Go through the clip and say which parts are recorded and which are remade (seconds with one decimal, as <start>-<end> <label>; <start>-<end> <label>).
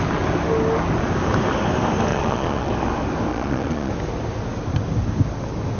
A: 0.0-2.1 recorded; 2.1-2.7 remade; 2.7-3.3 recorded; 3.3-3.9 remade; 3.9-5.8 recorded